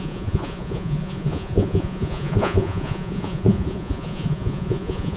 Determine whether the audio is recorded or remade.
remade